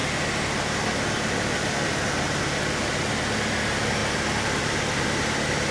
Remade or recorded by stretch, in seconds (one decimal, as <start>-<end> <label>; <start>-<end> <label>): 0.0-5.7 recorded

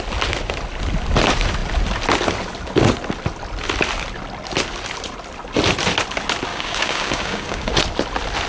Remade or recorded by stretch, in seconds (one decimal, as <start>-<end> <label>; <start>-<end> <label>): 0.0-6.5 recorded; 6.5-7.7 remade; 7.7-8.5 recorded

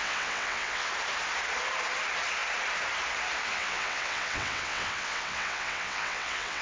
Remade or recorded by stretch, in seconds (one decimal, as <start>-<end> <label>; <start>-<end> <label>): 0.0-0.9 remade; 0.9-3.5 recorded; 3.5-6.6 remade

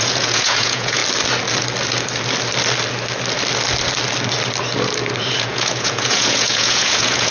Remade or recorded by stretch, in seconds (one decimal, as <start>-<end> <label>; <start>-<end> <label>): 0.0-1.0 remade; 1.0-5.4 recorded; 5.4-7.3 remade

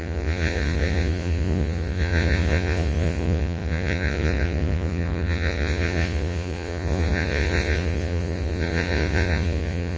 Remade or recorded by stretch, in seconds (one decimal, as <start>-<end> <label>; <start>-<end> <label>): 0.0-10.0 remade

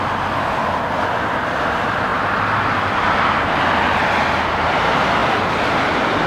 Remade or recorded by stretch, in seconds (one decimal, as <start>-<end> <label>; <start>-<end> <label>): 0.0-6.3 recorded

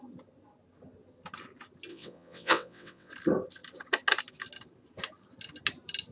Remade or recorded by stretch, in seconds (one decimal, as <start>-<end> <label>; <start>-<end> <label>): 0.0-1.9 recorded; 1.9-3.1 remade; 3.1-6.1 recorded

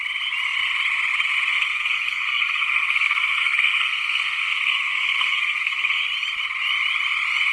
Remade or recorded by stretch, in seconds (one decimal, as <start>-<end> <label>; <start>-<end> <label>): 0.0-1.5 recorded; 1.5-6.0 remade; 6.0-7.5 recorded